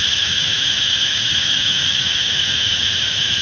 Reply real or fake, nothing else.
fake